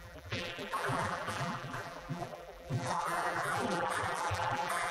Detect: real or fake fake